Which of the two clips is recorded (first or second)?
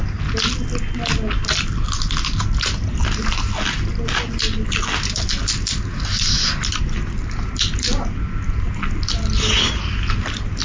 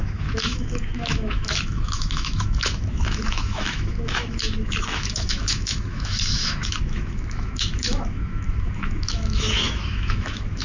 first